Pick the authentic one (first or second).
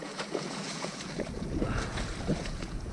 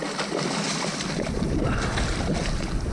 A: second